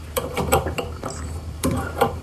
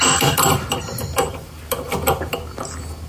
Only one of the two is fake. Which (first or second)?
first